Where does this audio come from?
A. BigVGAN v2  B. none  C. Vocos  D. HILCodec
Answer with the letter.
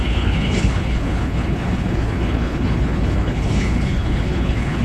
D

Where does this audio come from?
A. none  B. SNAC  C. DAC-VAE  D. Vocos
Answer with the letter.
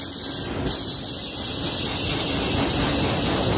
A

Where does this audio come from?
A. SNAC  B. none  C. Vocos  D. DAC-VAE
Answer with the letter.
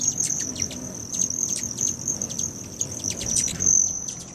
B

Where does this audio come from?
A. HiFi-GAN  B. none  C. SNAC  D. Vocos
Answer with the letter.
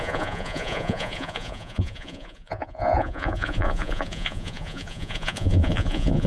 D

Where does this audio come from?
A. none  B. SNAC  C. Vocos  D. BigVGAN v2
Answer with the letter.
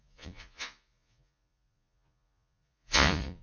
C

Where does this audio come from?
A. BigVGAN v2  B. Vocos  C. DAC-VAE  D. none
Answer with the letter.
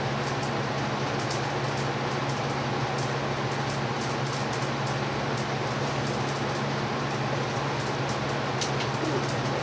D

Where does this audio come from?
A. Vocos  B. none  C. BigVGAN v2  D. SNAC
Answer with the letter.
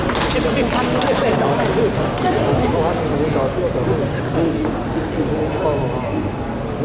B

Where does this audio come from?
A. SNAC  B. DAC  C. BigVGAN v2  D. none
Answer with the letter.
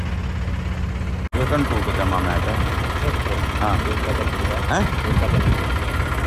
D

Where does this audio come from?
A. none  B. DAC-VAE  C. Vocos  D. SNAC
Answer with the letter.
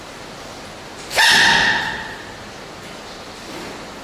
A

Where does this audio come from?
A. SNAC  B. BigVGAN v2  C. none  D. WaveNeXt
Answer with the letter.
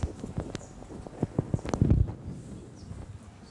C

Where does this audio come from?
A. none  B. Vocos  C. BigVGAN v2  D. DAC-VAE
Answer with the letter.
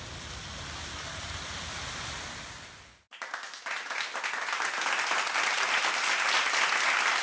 A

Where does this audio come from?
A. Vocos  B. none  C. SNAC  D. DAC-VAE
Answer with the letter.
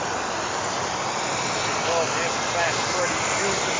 B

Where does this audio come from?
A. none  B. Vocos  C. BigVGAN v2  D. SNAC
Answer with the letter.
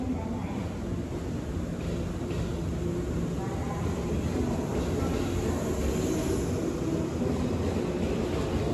A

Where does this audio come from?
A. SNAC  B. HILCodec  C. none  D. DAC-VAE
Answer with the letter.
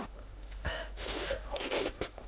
D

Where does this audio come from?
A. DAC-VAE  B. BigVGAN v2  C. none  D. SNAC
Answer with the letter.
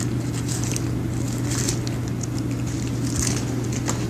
C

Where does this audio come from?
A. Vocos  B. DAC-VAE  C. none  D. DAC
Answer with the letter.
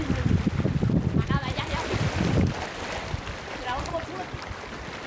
C